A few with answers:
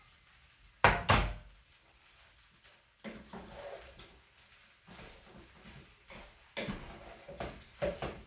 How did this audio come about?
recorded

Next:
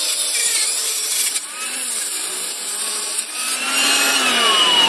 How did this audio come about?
remade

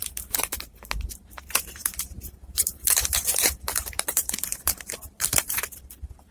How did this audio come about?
remade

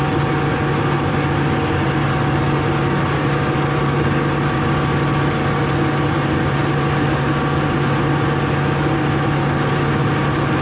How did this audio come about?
recorded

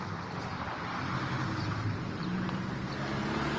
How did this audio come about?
remade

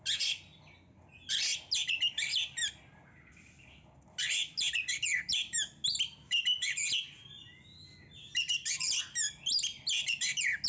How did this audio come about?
recorded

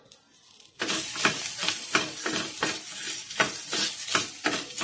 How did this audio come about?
remade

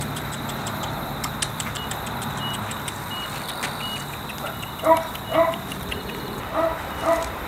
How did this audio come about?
remade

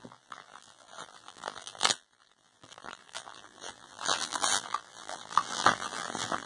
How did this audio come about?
remade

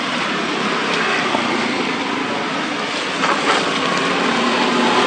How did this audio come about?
remade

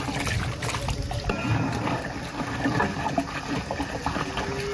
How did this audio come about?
recorded